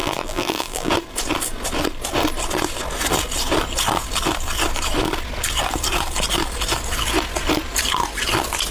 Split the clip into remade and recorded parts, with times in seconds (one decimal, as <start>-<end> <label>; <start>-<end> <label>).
0.0-0.9 remade; 0.9-8.7 recorded